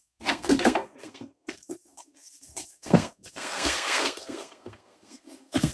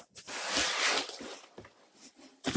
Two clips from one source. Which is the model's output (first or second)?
first